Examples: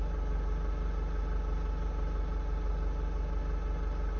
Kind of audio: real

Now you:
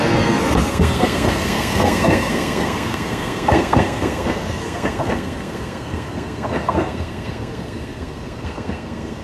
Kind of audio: fake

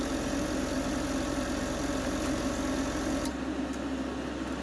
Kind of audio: real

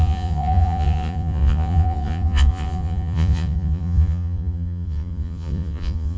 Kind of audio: fake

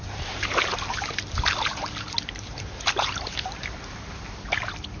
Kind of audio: fake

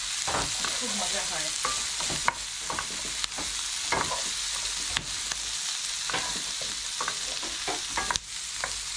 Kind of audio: real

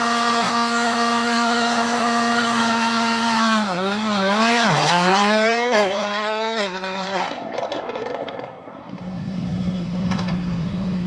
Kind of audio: fake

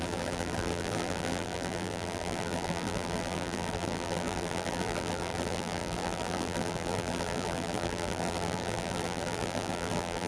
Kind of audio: fake